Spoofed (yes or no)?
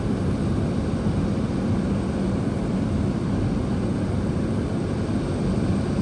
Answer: no